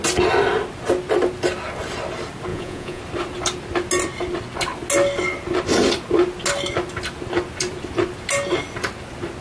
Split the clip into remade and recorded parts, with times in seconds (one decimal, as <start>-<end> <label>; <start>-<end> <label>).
0.0-2.5 recorded; 2.5-3.0 remade; 3.0-9.4 recorded